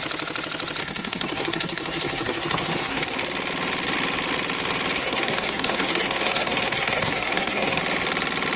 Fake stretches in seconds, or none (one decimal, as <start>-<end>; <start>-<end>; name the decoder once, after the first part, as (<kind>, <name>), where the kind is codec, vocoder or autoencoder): 0.8-3.2 (codec, SNAC); 5.0-7.8

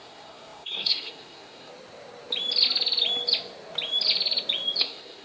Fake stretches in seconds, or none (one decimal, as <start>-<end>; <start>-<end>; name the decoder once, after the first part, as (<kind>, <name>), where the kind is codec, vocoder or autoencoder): 0.0-1.7 (codec, SNAC); 4.8-5.2